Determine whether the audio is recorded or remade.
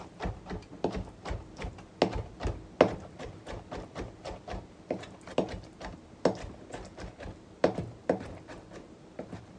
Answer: recorded